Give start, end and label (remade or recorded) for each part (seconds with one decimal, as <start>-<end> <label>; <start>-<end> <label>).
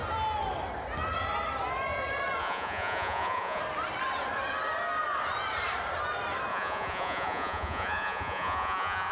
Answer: 0.0-2.4 recorded; 2.4-3.6 remade; 3.6-6.5 recorded; 6.5-9.1 remade